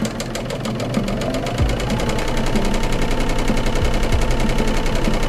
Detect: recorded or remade recorded